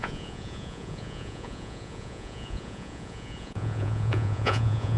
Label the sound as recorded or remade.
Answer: remade